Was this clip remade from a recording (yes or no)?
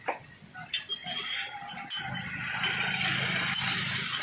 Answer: no